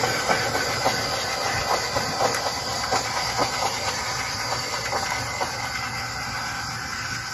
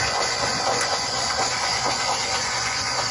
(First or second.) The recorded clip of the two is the first